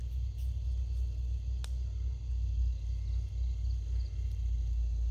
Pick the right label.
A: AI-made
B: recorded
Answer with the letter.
B